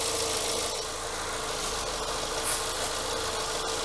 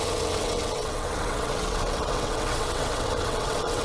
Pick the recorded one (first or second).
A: first